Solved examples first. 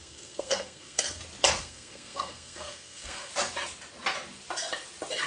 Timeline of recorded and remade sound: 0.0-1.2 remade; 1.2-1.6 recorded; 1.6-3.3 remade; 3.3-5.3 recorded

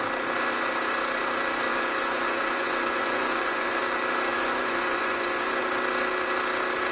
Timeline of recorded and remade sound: 0.0-1.7 recorded; 1.7-3.8 remade; 3.8-4.3 recorded; 4.3-5.6 remade; 5.6-6.9 recorded